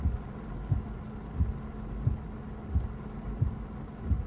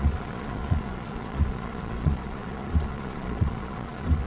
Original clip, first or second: first